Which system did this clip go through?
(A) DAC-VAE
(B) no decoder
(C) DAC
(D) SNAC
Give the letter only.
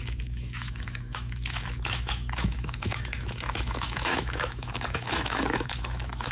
A